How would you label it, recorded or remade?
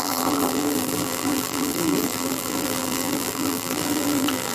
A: remade